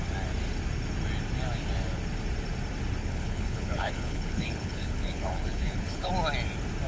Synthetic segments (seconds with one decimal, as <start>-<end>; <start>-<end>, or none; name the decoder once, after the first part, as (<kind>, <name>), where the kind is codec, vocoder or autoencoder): 3.0-6.1 (codec, HILCodec)